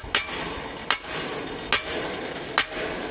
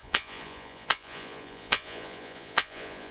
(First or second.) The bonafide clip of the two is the first